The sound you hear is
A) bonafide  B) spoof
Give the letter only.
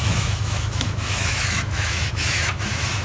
B